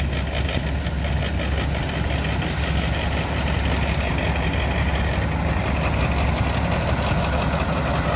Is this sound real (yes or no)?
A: yes